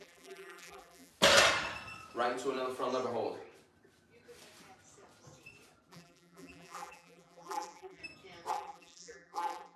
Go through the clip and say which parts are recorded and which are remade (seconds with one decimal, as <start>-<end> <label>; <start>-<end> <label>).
0.0-1.1 remade; 1.1-5.9 recorded; 5.9-8.0 remade; 8.0-8.5 recorded; 8.5-9.8 remade